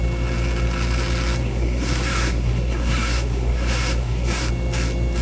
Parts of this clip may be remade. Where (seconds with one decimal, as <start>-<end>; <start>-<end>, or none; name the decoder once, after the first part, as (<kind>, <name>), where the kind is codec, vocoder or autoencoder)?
1.4-4.5 (codec, SNAC)